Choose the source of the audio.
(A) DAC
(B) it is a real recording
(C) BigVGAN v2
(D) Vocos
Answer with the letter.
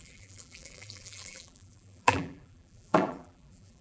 C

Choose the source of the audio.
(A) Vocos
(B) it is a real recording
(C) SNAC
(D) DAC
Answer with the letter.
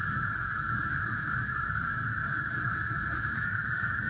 D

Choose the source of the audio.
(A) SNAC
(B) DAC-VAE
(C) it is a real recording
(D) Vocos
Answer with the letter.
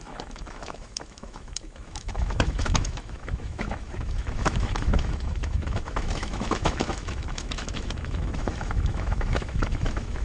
B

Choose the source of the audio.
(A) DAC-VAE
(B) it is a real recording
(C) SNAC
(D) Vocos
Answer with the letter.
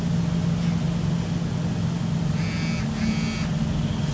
B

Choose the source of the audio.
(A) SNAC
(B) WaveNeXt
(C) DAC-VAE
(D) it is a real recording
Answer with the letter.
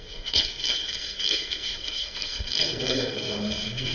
A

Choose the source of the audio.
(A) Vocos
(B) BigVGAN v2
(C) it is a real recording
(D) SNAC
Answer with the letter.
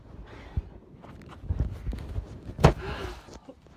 C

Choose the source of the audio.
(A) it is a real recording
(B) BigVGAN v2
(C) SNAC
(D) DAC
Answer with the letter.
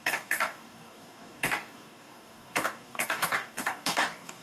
D